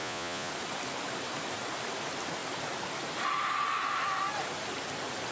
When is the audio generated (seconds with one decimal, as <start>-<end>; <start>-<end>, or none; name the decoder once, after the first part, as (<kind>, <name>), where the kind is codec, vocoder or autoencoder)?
0.0-0.5 (vocoder, Vocos)